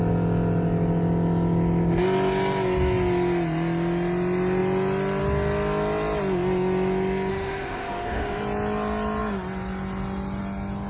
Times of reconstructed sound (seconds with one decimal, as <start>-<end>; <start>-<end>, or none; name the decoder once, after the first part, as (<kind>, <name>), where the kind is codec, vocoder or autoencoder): 7.3-8.4 (autoencoder, DAC-VAE)